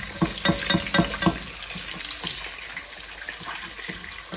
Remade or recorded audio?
recorded